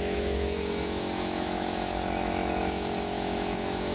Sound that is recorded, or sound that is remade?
remade